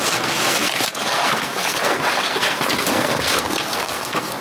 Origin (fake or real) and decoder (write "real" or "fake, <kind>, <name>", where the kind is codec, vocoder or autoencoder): fake, codec, SNAC